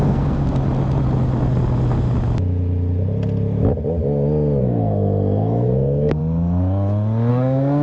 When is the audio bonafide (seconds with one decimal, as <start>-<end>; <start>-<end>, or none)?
0.4-4.6; 6.2-7.3